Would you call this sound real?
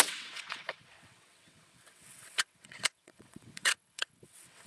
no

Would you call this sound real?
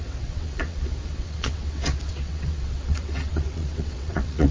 no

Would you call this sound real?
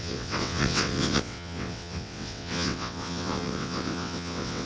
no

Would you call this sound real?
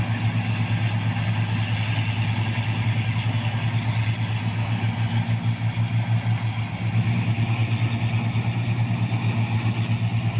yes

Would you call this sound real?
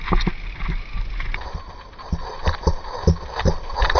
yes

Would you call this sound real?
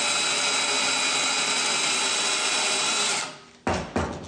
yes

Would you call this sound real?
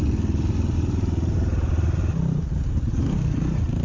yes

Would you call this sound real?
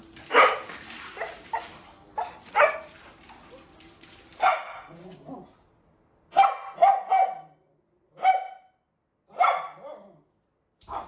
yes